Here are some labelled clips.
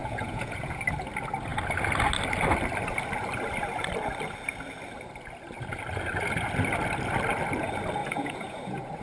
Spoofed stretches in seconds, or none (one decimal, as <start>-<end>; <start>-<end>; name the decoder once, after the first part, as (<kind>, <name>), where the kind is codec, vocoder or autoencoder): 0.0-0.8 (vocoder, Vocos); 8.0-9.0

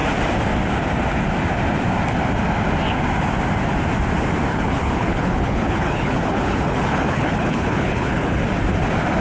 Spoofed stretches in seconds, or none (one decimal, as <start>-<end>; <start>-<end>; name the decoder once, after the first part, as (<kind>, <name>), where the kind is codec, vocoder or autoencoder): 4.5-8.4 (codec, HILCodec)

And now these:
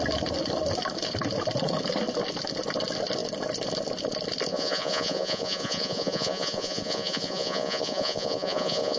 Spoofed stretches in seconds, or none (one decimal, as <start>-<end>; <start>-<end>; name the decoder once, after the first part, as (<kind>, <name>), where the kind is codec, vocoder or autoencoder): 4.5-9.0 (vocoder, Vocos)

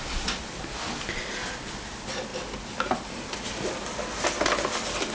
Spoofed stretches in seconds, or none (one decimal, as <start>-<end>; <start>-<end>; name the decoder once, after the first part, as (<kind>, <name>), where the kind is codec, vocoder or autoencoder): none

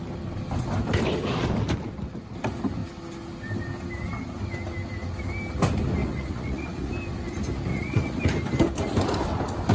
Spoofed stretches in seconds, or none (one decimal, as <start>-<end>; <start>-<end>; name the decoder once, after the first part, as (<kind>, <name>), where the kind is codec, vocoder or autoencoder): 6.0-6.9 (vocoder, Vocos); 7.7-8.2

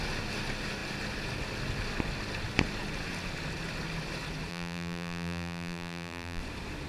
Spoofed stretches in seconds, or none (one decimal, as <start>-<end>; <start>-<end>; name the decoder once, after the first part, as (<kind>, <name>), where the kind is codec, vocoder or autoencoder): 4.5-6.4 (vocoder, BigVGAN v2)